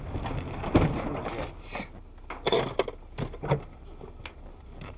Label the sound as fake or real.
real